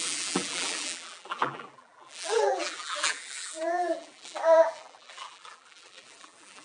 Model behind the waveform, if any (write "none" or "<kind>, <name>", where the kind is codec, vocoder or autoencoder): vocoder, BigVGAN v2